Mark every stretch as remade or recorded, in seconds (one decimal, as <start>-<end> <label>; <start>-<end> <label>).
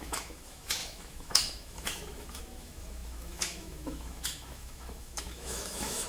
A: 0.0-6.1 remade